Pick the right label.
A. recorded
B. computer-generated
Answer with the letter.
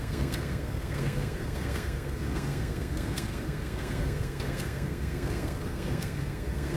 B